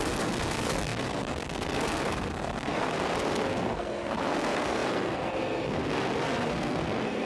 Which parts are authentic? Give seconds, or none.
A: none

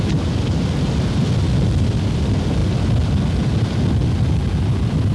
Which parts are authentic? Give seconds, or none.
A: 0.0-5.1

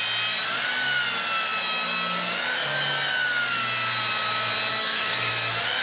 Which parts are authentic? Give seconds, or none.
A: 0.0-4.7; 5.3-5.8

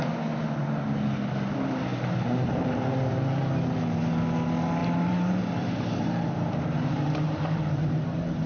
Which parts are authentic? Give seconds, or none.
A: 0.0-1.9; 2.9-4.8; 8.0-8.5

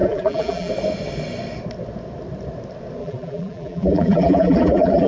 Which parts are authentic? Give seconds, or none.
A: 0.7-3.0

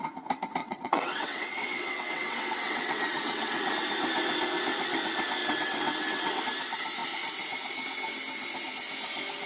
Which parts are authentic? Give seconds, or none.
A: 0.0-0.6; 3.7-5.4; 6.4-9.5